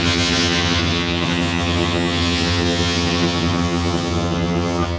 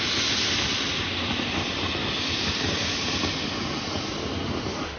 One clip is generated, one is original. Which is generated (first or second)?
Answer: first